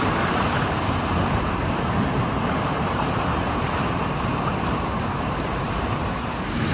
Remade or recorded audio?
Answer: remade